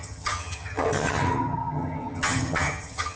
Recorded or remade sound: remade